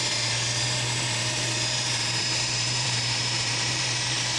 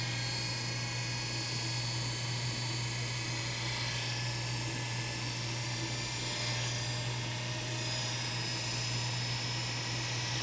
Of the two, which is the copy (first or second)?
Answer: first